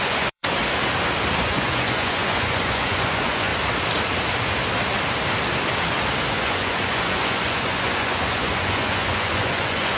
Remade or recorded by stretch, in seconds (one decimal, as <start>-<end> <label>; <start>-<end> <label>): 0.0-0.6 remade; 0.6-1.4 recorded; 1.4-3.5 remade; 3.5-6.3 recorded; 6.3-10.0 remade